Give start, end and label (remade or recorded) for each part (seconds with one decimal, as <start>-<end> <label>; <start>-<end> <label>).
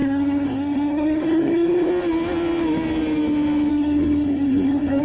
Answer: 0.0-1.9 remade; 1.9-3.7 recorded; 3.7-5.0 remade